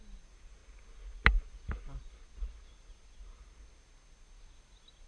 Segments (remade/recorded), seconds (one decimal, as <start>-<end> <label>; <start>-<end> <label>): 0.0-5.1 recorded